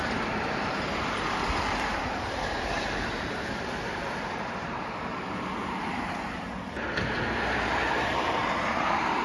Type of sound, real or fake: fake